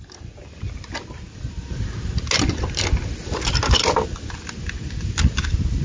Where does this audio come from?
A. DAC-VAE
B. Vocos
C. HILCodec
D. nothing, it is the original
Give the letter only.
D